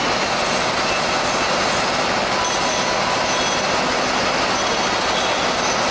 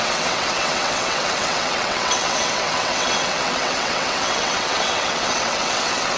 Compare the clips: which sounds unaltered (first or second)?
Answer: first